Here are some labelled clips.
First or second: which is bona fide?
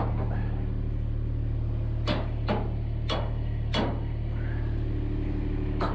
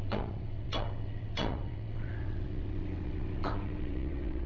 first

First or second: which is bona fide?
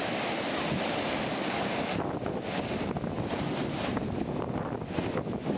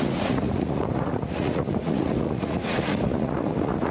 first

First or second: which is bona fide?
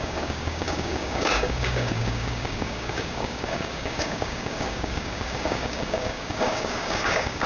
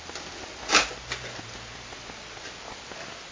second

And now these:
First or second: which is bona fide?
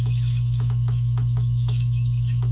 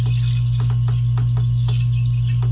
second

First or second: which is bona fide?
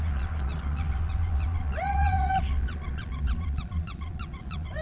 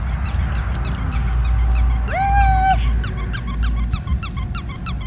second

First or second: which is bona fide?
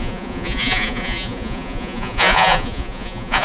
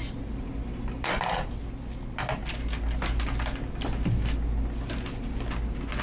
second